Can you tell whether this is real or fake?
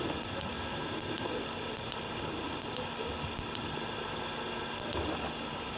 real